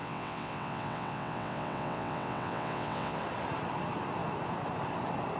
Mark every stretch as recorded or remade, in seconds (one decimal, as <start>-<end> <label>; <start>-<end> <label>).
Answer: 0.0-3.2 remade; 3.2-5.4 recorded